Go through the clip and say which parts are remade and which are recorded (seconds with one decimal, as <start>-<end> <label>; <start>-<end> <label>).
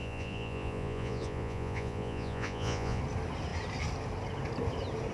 0.0-3.0 remade; 3.0-5.1 recorded